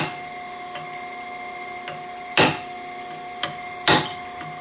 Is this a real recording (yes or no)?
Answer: yes